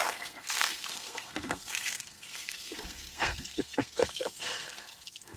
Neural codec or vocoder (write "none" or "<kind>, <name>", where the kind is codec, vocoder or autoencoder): codec, SNAC